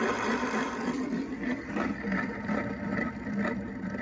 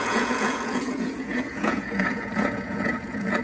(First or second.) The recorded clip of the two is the first